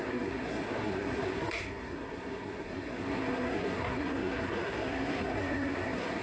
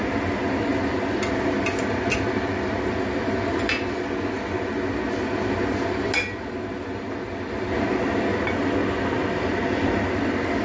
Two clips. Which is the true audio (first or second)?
second